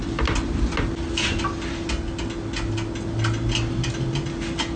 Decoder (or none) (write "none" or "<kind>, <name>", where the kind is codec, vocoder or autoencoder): none